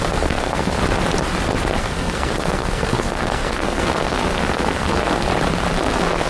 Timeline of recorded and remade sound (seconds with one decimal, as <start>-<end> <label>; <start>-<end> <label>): 0.0-0.8 remade; 0.8-1.8 recorded; 1.8-5.3 remade; 5.3-5.8 recorded; 5.8-6.3 remade